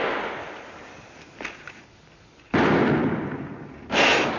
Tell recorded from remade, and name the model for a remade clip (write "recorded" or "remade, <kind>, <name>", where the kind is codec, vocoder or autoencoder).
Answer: recorded